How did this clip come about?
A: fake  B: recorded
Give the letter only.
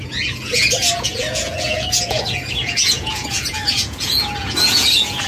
A